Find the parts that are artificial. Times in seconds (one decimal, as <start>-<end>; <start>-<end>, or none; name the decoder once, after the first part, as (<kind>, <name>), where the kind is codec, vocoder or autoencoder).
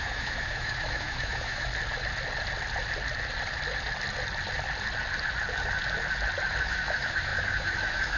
0.0-1.7 (autoencoder, DAC-VAE); 6.6-8.2